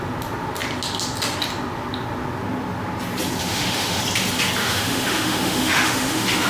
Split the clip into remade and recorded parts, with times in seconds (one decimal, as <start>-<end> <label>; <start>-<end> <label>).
0.0-3.4 recorded; 3.4-4.0 remade; 4.0-4.6 recorded; 4.6-6.5 remade